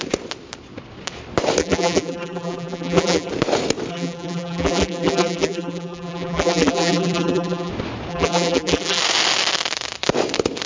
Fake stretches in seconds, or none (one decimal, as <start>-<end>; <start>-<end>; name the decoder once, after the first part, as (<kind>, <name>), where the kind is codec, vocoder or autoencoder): 1.6-3.3 (vocoder, BigVGAN v2); 3.9-7.7; 8.1-9.0